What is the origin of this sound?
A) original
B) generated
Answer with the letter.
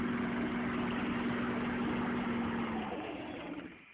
A